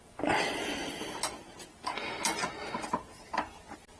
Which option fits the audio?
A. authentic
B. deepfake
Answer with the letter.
A